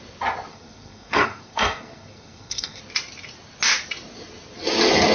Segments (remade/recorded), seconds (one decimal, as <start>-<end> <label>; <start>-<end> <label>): 0.0-0.5 recorded; 0.5-2.8 remade; 2.8-5.1 recorded